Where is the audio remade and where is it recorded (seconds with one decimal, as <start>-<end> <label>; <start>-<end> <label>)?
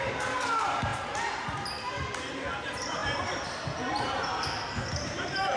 0.0-0.9 remade; 0.9-2.6 recorded; 2.6-5.6 remade